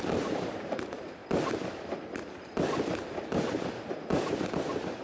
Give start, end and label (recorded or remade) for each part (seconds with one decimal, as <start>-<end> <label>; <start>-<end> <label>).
0.0-1.2 remade; 1.2-3.9 recorded; 3.9-5.0 remade